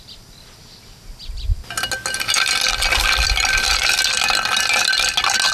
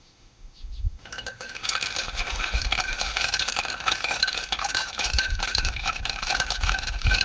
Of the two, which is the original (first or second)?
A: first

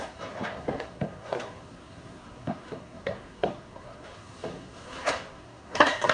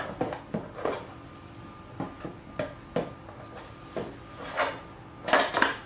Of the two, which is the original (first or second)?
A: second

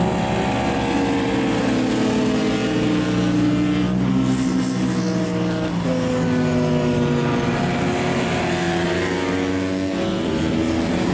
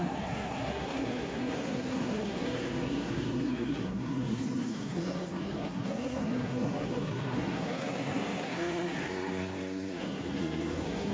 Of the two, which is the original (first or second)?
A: first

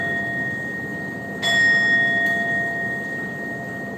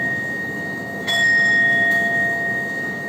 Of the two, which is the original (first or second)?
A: first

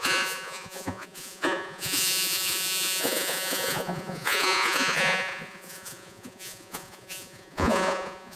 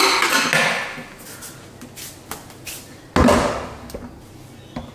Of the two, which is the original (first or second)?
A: second